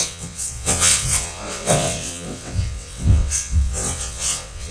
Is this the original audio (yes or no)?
no